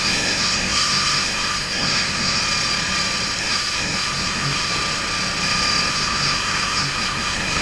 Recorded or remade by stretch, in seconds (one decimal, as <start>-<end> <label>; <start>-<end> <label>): 0.0-2.4 remade; 2.4-3.4 recorded; 3.4-4.7 remade; 4.7-5.9 recorded; 5.9-7.6 remade